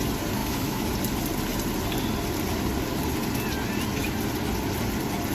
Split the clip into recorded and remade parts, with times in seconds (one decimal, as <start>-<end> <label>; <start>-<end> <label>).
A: 0.0-0.4 recorded; 0.4-0.9 remade; 0.9-5.3 recorded